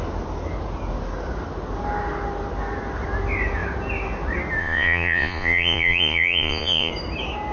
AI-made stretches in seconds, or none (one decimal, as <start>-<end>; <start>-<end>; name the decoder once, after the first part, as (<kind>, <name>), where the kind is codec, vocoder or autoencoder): 4.6-6.9 (vocoder, Vocos)